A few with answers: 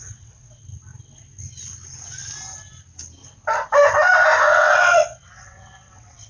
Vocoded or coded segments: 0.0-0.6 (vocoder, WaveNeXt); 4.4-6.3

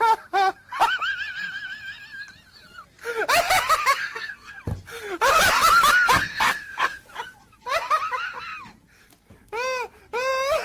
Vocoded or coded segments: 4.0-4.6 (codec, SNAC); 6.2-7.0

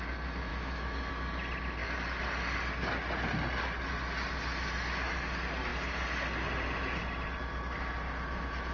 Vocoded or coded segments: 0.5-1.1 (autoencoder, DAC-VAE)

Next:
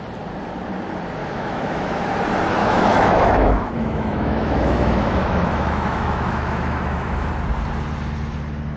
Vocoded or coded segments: 1.2-2.0 (autoencoder, DAC-VAE); 2.6-7.3